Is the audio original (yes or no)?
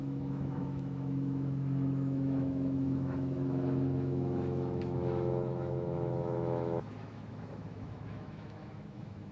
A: no